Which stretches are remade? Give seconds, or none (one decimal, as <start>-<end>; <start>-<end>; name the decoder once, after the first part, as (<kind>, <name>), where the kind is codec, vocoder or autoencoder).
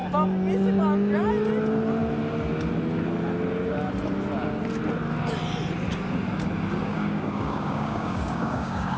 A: 6.8-9.0 (codec, DAC)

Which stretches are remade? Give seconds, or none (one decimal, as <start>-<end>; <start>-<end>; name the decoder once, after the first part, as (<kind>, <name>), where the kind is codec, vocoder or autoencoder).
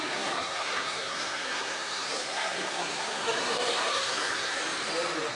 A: 0.0-4.6 (codec, SNAC)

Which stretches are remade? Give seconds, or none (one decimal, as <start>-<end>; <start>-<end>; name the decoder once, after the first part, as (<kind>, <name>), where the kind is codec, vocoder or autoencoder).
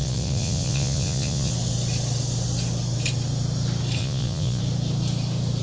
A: 0.0-1.5 (vocoder, Vocos); 4.0-4.6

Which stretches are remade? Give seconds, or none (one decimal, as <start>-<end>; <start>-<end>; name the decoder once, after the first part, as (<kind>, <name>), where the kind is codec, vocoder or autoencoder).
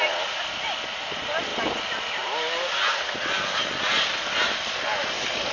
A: 1.5-2.1 (vocoder, BigVGAN v2)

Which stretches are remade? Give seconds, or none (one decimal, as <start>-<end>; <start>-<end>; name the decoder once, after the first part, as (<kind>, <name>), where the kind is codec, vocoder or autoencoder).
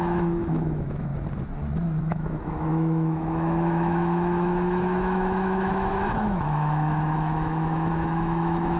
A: 0.0-1.1 (autoencoder, DAC-VAE); 2.0-8.8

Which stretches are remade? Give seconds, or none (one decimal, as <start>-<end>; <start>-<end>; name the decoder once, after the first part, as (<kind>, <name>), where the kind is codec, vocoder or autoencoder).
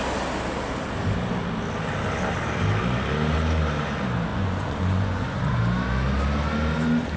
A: 4.3-5.6 (vocoder, Vocos)